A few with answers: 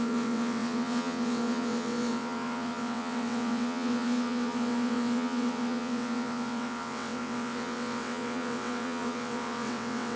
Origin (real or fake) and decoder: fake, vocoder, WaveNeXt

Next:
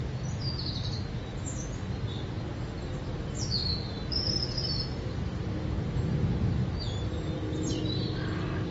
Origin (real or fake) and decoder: real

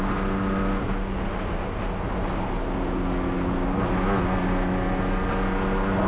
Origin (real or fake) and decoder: real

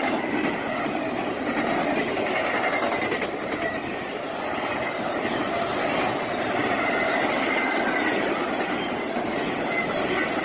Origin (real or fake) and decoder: real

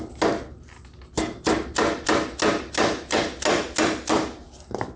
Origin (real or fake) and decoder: real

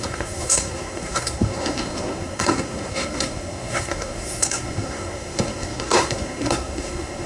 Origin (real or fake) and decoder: fake, codec, SNAC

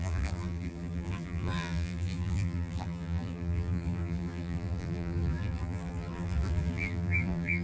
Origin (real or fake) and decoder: fake, vocoder, BigVGAN v2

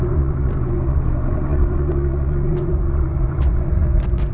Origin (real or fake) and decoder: fake, vocoder, Vocos